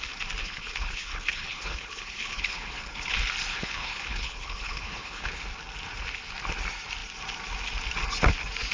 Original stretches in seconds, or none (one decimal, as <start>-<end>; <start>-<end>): 0.0-0.4; 3.1-3.5; 5.4-8.7